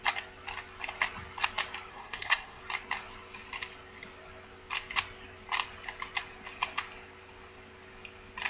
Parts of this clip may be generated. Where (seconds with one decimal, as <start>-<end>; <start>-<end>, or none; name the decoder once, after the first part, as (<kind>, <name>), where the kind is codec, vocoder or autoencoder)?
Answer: 1.9-2.6 (codec, SNAC)